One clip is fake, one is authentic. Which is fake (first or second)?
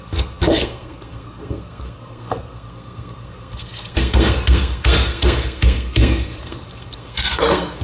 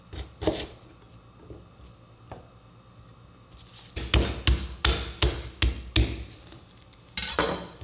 first